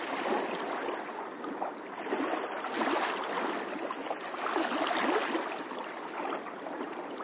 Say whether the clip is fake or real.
real